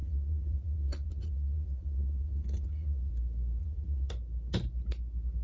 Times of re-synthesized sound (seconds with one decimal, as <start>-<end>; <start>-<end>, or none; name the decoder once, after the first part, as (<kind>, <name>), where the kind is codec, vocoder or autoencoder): 0.0-3.1 (vocoder, Vocos); 3.6-4.1